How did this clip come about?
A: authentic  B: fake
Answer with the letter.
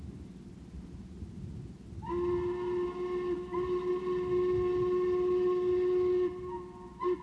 A